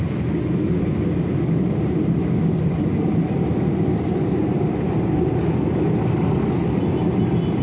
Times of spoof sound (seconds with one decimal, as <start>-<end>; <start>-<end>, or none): none